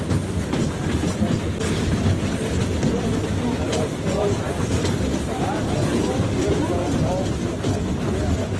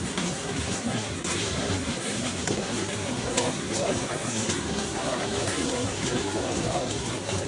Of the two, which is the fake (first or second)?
second